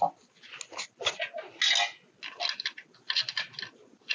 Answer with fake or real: real